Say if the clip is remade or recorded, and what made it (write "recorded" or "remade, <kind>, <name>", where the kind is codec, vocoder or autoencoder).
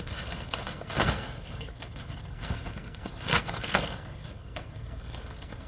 remade, codec, SNAC